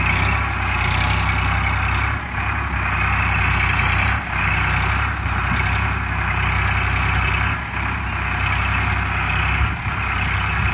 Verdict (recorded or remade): recorded